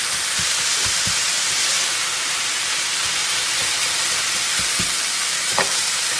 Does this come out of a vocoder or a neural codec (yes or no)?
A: no